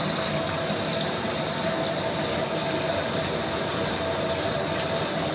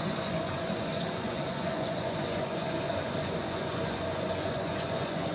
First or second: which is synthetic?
second